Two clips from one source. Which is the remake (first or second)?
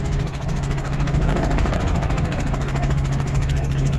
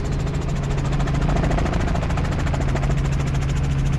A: first